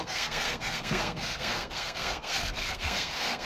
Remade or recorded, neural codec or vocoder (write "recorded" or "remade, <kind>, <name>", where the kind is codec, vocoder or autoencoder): remade, codec, SNAC